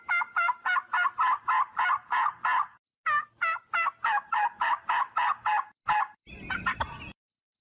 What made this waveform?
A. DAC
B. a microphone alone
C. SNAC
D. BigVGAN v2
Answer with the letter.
B